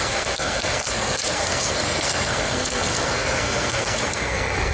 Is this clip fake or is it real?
fake